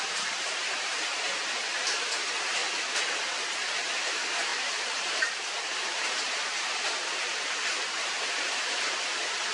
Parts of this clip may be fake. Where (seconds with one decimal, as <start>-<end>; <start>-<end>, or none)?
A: 0.0-1.1; 2.0-2.6; 4.0-9.5